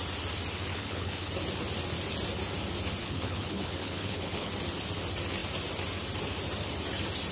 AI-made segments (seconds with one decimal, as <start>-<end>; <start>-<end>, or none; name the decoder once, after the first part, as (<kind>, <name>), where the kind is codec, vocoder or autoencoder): 0.7-1.3 (codec, HILCodec); 3.0-4.5